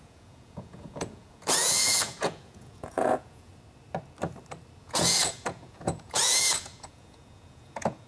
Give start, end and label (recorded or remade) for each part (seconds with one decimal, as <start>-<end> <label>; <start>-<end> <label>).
0.0-3.5 remade; 3.5-4.8 recorded; 4.8-8.1 remade

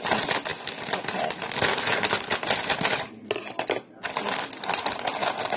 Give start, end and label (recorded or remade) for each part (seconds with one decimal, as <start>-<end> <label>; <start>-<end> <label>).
0.0-5.6 recorded

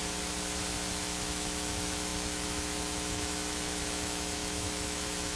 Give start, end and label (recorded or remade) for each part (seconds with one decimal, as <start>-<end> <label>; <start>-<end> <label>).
0.0-0.9 recorded; 0.9-5.4 remade

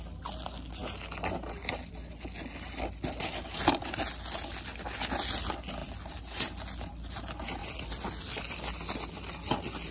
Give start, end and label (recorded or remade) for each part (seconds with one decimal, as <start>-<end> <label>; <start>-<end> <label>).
0.0-9.9 recorded